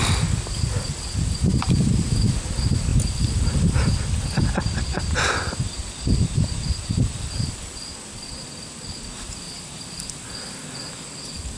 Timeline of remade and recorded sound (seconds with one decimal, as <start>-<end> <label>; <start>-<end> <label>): 0.0-2.9 remade; 2.9-5.8 recorded; 5.8-11.6 remade